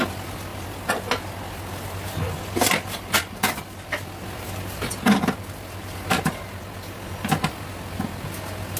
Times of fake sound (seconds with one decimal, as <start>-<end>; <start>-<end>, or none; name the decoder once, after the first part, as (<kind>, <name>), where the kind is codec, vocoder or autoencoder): none